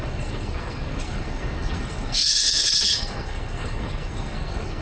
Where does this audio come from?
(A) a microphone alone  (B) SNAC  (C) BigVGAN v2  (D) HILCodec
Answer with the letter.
B